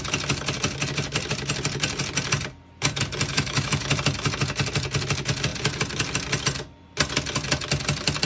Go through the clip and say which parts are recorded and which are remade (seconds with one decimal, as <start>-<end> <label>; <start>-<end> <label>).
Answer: 0.0-3.3 recorded; 3.3-3.9 remade; 3.9-8.3 recorded